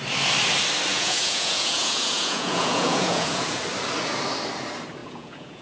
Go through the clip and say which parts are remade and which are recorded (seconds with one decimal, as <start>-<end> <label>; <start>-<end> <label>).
0.0-0.9 recorded; 0.9-3.6 remade; 3.6-5.0 recorded; 5.0-5.6 remade